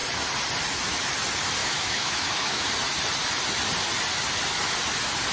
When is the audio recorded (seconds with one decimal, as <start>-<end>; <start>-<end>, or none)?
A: 0.0-1.6; 2.7-5.3